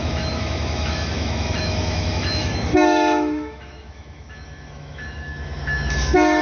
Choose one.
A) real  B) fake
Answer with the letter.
B